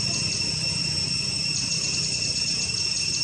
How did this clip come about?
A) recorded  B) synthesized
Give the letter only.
B